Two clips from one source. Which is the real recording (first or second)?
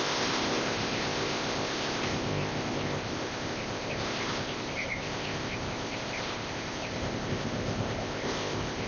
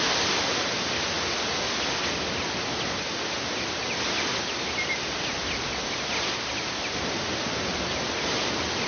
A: second